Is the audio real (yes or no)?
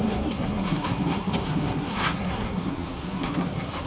no